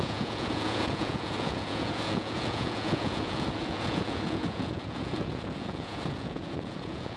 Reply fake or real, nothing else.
fake